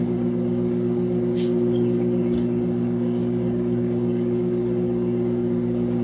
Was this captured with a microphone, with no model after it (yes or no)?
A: no